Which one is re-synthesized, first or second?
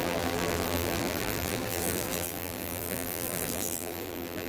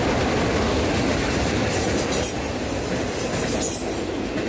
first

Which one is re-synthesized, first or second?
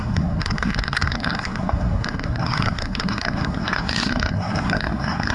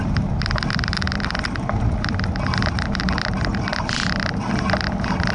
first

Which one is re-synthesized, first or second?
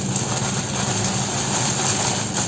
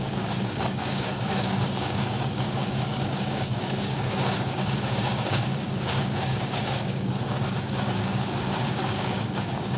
second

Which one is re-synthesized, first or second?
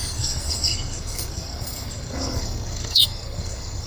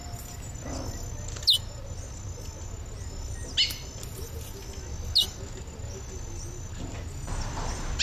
first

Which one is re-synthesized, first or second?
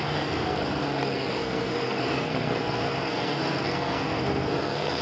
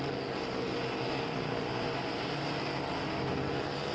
first